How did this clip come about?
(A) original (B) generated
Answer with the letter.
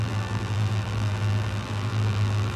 B